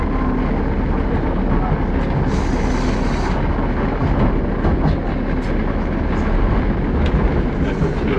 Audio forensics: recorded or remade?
recorded